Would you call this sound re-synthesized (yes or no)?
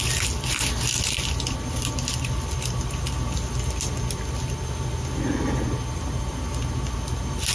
no